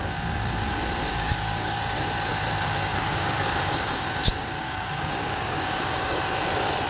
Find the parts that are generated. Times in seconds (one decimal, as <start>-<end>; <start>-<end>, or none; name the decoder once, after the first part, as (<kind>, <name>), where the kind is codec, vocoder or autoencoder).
1.1-1.8 (codec, DAC); 2.9-6.2